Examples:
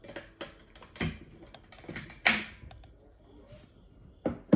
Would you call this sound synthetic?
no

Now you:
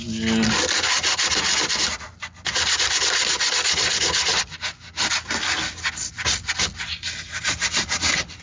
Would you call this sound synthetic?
no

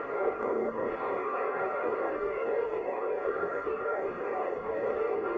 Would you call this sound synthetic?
yes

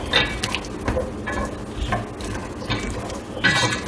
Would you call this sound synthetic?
no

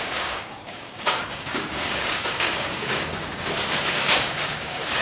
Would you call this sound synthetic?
yes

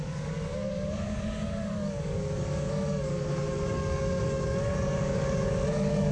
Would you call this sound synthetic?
yes